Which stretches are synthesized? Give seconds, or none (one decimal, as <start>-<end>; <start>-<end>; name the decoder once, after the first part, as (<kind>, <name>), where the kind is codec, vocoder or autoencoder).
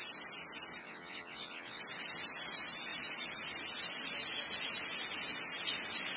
0.8-1.8 (vocoder, WaveNeXt)